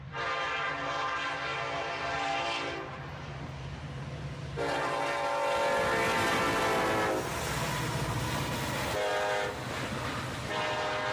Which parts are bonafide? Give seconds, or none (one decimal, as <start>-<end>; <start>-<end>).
0.0-11.1